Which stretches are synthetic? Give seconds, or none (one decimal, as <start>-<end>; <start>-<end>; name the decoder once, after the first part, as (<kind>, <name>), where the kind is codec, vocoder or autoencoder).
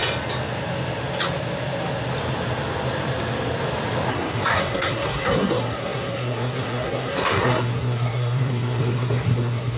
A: 4.1-9.8 (codec, SNAC)